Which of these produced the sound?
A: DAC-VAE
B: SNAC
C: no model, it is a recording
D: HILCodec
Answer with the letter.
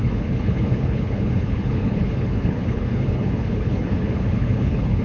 D